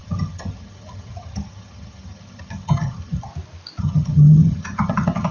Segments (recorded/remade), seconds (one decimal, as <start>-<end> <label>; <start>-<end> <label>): 0.0-3.3 remade; 3.3-3.8 recorded; 3.8-5.3 remade